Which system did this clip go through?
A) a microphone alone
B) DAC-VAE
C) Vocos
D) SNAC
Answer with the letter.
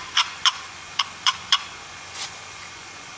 C